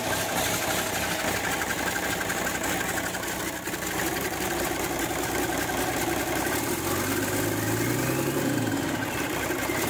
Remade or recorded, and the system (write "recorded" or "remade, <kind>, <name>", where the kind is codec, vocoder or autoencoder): recorded